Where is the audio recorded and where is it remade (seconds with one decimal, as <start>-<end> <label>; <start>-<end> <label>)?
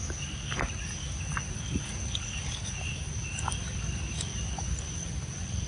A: 0.0-5.7 recorded